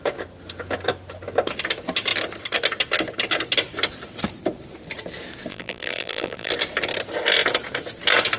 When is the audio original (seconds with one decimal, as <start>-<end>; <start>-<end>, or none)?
0.0-5.5; 6.5-8.4